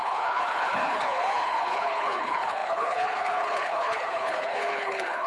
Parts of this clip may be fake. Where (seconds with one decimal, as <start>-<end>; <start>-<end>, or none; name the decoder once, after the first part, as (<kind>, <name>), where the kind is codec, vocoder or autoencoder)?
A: 0.0-5.3 (codec, HILCodec)